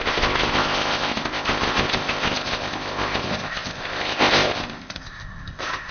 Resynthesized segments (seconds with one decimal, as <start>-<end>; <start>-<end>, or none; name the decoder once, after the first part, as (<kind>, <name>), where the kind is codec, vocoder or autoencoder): 0.0-5.9 (codec, ZipCodec)